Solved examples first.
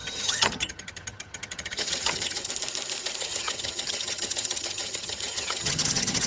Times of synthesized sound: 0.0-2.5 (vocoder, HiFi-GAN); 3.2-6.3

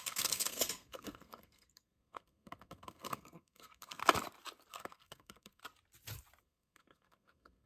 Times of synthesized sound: 0.0-4.0 (codec, SNAC); 4.7-5.6; 6.4-7.7

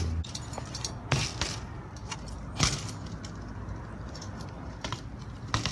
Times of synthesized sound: none